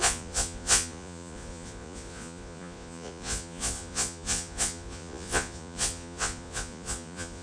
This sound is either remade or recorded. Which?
remade